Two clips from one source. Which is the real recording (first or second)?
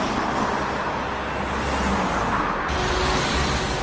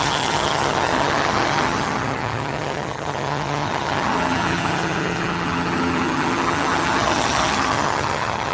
first